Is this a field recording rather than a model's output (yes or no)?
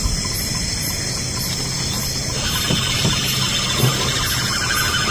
yes